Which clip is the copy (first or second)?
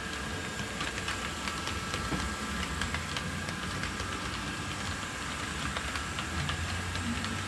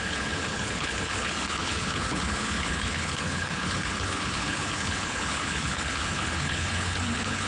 second